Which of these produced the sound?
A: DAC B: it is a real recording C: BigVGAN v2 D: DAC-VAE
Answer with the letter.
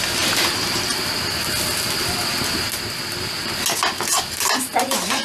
B